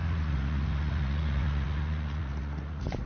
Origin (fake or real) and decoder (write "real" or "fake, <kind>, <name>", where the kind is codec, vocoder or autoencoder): fake, vocoder, Vocos